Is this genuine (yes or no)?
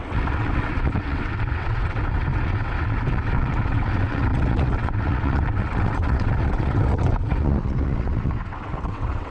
no